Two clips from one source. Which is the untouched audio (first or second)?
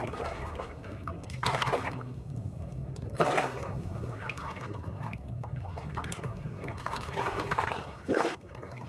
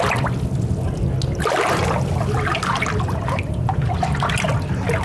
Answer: second